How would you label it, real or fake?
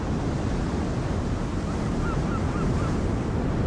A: real